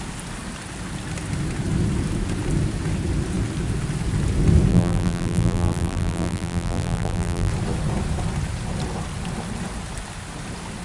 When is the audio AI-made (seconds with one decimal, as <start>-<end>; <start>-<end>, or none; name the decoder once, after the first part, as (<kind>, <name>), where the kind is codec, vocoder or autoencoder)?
4.7-7.5 (vocoder, BigVGAN v2)